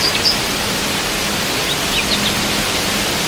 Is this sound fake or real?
real